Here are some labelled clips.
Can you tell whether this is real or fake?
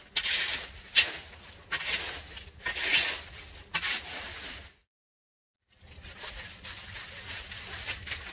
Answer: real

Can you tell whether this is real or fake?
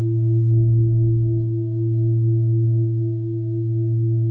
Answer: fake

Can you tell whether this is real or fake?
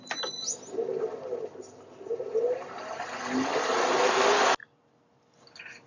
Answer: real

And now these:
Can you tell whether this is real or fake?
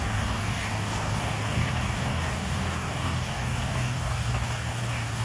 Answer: fake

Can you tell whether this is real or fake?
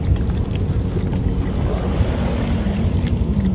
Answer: real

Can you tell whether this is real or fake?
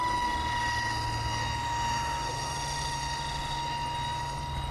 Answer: real